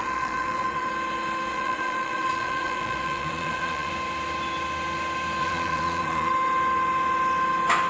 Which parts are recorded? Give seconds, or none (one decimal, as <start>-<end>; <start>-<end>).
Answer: 0.9-1.5; 3.9-5.4; 6.3-7.9

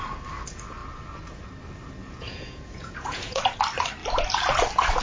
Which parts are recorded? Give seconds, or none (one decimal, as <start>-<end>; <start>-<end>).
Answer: 0.0-2.0; 3.4-5.0

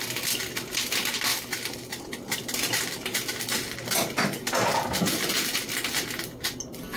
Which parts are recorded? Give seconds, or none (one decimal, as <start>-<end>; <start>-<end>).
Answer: 0.0-1.3; 2.0-7.0

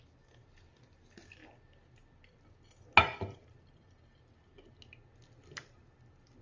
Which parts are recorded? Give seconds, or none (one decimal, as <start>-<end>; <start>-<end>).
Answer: 0.0-6.4

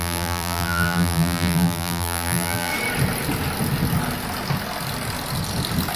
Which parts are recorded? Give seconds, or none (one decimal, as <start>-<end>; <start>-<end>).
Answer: 2.7-6.0

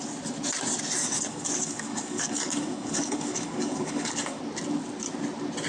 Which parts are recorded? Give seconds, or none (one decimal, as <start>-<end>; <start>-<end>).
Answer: 0.0-1.0; 4.4-5.7

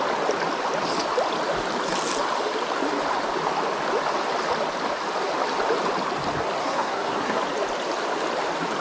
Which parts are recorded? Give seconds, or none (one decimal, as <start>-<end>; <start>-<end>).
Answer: 0.0-6.6; 7.4-8.8